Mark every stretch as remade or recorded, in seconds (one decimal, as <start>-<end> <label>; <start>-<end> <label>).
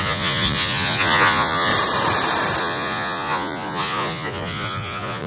0.0-1.7 remade; 1.7-2.6 recorded; 2.6-5.3 remade